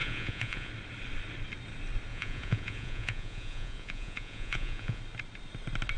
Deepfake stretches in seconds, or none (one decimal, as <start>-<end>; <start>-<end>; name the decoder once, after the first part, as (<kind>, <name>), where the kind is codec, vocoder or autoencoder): 0.0-0.7 (vocoder, Vocos); 2.1-5.0